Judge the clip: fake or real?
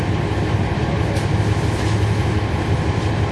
real